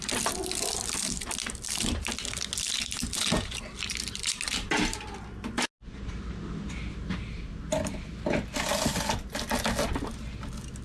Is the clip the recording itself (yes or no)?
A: yes